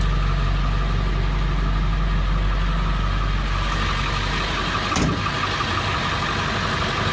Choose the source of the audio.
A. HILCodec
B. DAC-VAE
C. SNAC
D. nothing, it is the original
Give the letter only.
D